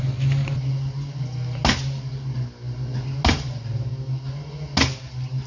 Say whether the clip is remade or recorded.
recorded